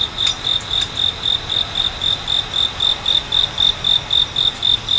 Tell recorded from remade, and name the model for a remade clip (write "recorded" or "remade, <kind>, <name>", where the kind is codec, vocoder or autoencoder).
recorded